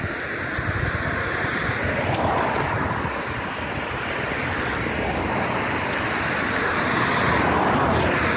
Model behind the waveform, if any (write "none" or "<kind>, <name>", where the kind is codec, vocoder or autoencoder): none